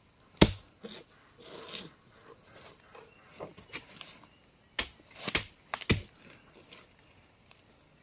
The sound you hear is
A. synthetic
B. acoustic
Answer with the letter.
B